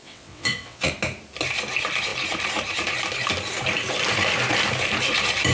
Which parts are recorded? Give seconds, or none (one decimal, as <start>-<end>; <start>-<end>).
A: 0.9-5.5